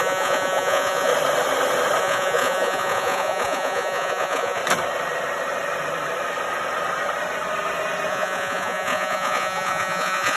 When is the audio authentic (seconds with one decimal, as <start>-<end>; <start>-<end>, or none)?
1.1-2.0; 4.6-8.1